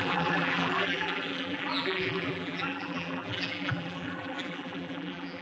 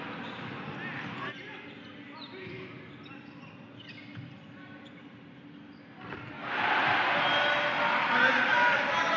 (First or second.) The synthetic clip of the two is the first